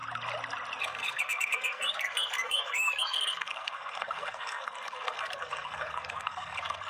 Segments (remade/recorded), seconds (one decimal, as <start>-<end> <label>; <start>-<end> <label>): 0.0-0.8 recorded; 0.8-6.9 remade